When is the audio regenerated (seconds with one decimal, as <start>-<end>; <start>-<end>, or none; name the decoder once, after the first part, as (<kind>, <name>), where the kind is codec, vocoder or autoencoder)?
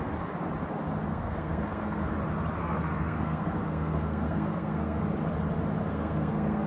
1.1-2.1 (codec, SNAC); 2.6-5.0; 5.8-6.7